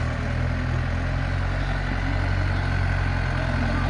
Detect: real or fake real